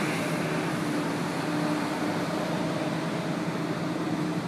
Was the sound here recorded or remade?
recorded